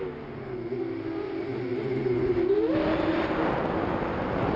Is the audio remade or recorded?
recorded